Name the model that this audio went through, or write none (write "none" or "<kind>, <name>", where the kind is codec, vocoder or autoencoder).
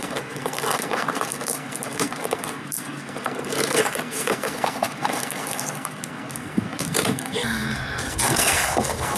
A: codec, SNAC